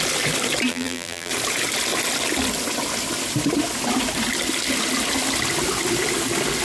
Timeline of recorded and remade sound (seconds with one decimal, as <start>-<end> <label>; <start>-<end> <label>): 0.0-0.7 recorded; 0.7-1.3 remade; 1.3-6.6 recorded